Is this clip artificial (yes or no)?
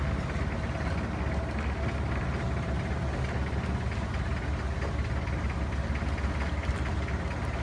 no